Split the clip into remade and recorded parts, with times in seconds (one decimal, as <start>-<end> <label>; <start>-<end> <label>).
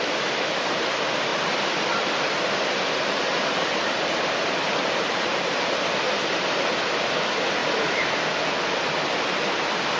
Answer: 0.0-7.6 remade; 7.6-8.7 recorded; 8.7-10.0 remade